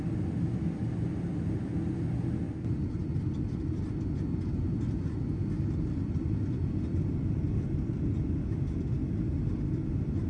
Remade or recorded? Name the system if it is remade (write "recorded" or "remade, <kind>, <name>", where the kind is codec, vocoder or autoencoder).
recorded